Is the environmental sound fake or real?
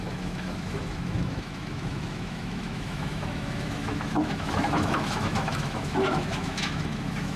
fake